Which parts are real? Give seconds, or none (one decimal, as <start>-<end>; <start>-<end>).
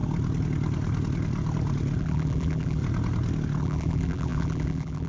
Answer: 0.0-2.0; 2.8-3.6